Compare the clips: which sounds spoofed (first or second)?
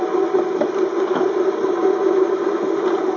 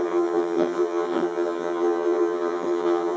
second